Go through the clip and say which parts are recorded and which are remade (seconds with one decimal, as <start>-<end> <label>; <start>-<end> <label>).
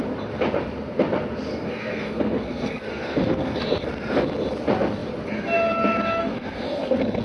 0.0-1.5 recorded; 1.5-3.6 remade; 3.6-6.2 recorded; 6.2-7.2 remade